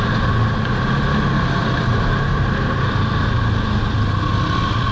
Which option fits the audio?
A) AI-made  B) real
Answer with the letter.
B